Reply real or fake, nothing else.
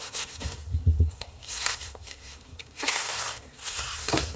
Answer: fake